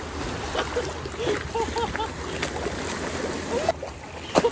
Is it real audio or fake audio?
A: real